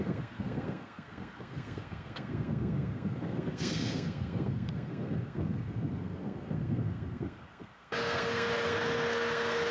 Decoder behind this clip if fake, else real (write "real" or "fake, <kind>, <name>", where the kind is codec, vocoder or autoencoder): fake, codec, SNAC